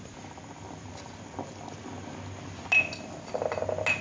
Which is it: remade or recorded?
recorded